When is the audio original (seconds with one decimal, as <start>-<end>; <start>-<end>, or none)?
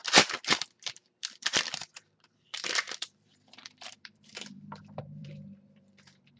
0.0-0.5